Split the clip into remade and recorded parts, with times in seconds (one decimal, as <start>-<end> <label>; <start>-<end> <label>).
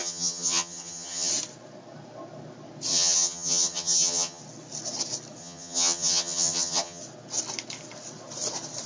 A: 0.0-1.3 remade; 1.3-2.9 recorded; 2.9-4.4 remade; 4.4-5.4 recorded; 5.4-7.0 remade; 7.0-8.9 recorded